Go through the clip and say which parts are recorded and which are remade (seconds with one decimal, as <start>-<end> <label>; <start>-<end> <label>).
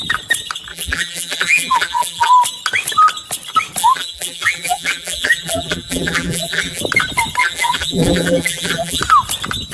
0.0-0.7 recorded; 0.7-2.3 remade; 2.3-3.8 recorded; 3.8-6.8 remade; 6.8-7.4 recorded; 7.4-9.0 remade; 9.0-9.7 recorded